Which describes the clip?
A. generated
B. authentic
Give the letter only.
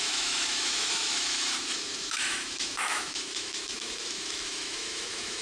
A